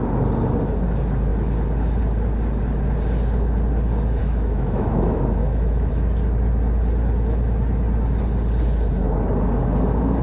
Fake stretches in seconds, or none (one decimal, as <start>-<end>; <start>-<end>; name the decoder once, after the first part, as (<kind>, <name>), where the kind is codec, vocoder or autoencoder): 4.2-5.9 (autoencoder, DAC-VAE)